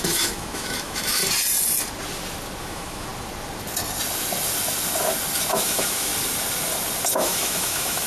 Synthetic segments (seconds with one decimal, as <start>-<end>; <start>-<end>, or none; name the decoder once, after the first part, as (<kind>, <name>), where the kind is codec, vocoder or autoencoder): 0.0-1.2 (autoencoder, DAC-VAE); 2.6-3.1; 5.5-6.1; 7.1-8.1